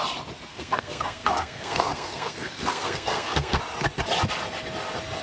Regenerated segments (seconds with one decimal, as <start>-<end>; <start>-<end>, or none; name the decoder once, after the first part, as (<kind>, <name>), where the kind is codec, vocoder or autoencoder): 0.5-3.6 (codec, SNAC)